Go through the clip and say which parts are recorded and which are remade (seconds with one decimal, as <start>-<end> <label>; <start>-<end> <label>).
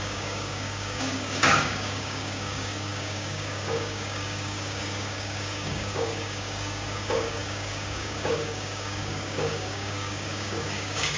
0.0-11.2 remade